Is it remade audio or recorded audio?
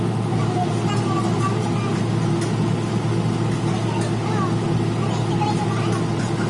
recorded